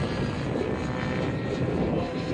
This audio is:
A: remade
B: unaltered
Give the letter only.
B